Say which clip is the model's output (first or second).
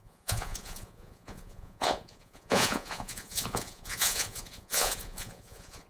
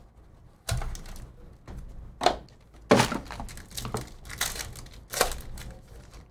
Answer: first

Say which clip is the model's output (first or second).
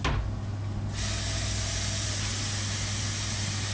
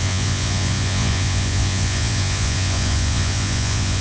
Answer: second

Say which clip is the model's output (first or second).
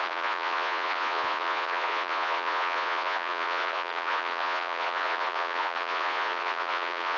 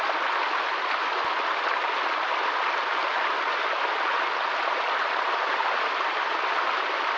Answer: first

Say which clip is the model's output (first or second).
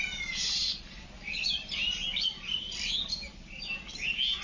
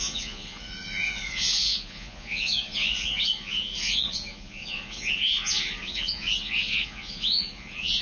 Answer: second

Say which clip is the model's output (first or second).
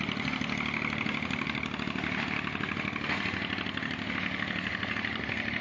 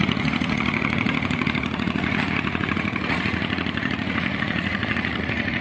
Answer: second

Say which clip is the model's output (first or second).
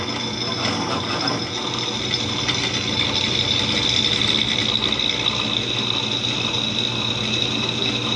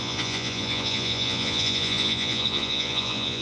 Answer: second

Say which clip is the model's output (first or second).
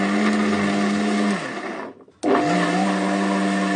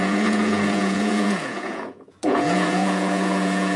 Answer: second